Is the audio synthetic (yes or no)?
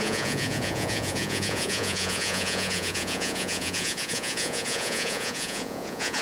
yes